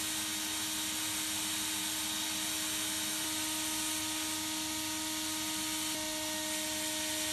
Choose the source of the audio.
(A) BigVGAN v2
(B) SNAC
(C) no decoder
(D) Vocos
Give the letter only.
C